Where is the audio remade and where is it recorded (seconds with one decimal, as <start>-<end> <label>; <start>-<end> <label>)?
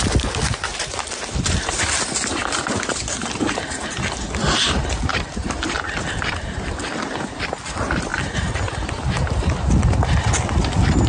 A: 0.0-0.7 recorded; 0.7-4.4 remade; 4.4-5.1 recorded; 5.1-6.2 remade; 6.2-8.1 recorded; 8.1-9.1 remade; 9.1-11.1 recorded